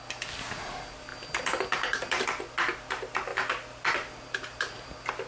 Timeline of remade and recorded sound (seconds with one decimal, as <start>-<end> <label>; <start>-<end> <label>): 0.0-5.3 recorded